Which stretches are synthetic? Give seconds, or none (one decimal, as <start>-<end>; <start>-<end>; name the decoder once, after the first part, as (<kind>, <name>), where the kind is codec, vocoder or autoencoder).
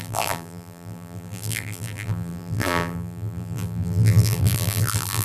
0.0-5.2 (vocoder, BigVGAN v2)